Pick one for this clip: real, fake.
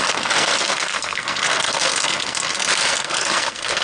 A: fake